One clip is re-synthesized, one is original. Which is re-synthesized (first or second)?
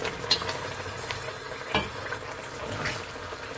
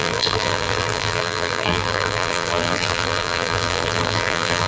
second